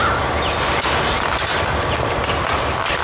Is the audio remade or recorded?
recorded